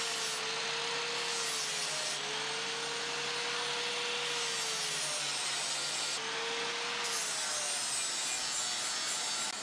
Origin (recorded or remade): recorded